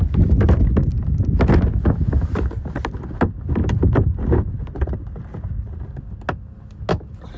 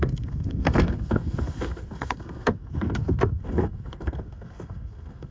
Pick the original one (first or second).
first